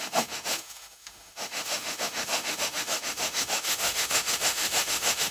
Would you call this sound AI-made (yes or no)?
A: yes